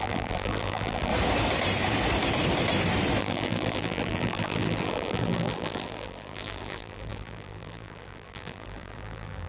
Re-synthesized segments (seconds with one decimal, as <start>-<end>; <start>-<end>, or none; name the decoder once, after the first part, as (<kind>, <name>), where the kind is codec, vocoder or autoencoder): 0.0-1.1 (vocoder, BigVGAN v2); 3.2-9.5